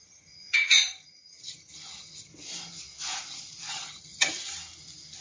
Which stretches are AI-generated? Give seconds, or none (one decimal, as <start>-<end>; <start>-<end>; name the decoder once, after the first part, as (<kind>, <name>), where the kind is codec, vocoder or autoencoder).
0.0-2.3 (vocoder, HiFi-GAN); 3.7-4.5